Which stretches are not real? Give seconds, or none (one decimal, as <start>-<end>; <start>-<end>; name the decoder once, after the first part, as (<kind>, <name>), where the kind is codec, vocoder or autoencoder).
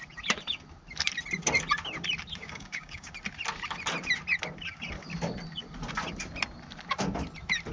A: 2.4-3.1 (codec, DAC)